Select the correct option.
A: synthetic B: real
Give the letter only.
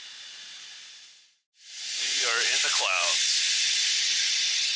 B